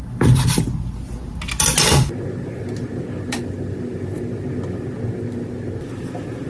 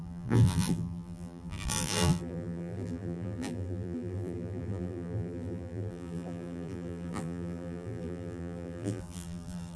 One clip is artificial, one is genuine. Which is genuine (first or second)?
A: first